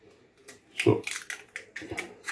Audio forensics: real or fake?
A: real